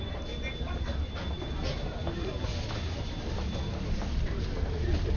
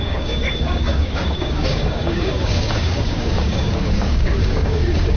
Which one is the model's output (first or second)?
second